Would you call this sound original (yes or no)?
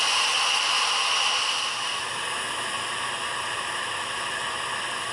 yes